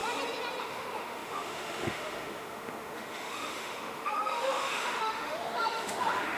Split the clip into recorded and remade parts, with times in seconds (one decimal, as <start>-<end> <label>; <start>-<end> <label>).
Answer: 0.0-0.6 recorded; 0.6-6.4 remade